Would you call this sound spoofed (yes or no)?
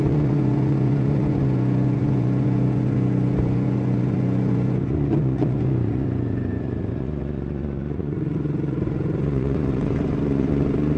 yes